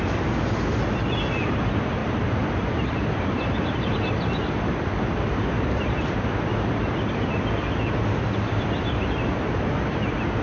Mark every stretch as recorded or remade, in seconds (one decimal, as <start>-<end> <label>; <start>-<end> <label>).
0.0-2.0 recorded; 2.0-3.9 remade; 3.9-5.3 recorded; 5.3-5.9 remade; 5.9-10.4 recorded